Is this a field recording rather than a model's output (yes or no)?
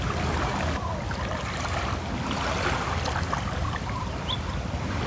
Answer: yes